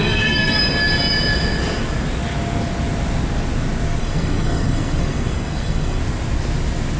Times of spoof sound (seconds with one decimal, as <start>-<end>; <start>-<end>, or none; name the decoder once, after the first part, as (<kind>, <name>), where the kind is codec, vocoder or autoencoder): 0.0-0.6 (codec, SNAC); 4.0-6.0